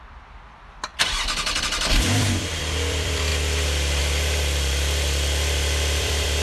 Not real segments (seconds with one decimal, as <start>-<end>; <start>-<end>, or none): 0.0-0.9; 1.6-3.3; 4.0-6.4